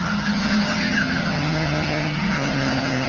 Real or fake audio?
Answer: fake